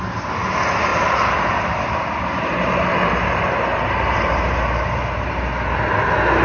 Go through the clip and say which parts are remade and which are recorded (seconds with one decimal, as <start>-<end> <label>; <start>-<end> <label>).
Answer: 0.0-0.9 recorded; 0.9-4.7 remade; 4.7-6.4 recorded